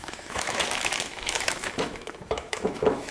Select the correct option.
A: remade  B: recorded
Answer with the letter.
A